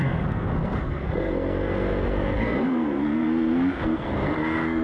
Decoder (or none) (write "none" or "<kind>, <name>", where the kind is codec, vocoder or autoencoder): codec, SNAC